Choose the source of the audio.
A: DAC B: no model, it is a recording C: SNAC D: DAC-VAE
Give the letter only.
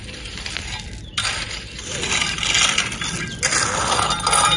B